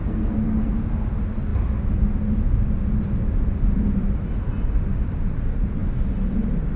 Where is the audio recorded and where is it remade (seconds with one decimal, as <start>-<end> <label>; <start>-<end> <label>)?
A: 0.0-0.8 remade; 0.8-6.8 recorded